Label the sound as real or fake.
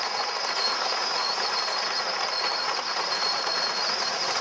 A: fake